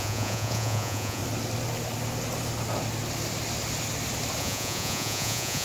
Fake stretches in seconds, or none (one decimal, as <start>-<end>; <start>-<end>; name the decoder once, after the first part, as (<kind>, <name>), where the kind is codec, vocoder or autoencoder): 0.0-1.2 (vocoder, Vocos); 4.4-5.6

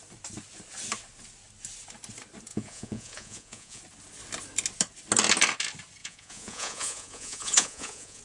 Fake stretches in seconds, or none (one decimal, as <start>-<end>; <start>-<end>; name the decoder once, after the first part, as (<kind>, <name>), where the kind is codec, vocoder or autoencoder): 2.5-3.8 (vocoder, Vocos); 6.0-8.2

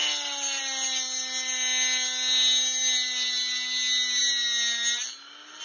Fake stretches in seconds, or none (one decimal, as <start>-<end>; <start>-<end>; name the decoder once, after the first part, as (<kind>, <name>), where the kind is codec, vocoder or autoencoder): none

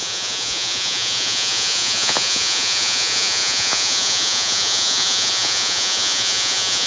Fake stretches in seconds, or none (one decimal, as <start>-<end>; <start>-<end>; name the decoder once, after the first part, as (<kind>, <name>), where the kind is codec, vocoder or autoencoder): 0.0-6.9 (vocoder, Vocos)